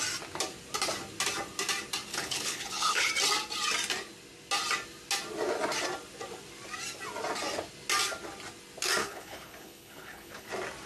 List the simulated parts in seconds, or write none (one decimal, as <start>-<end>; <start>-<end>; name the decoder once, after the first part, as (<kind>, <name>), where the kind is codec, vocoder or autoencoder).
2.1-3.1 (codec, HILCodec); 9.0-10.5